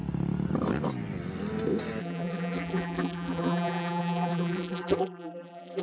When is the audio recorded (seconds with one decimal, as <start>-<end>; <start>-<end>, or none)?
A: 0.0-2.0